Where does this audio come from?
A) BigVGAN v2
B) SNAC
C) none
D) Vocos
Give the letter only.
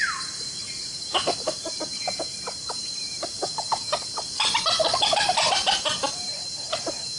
A